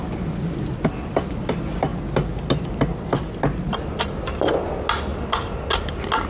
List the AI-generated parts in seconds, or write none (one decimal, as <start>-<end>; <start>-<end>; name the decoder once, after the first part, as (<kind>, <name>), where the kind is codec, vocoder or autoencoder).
none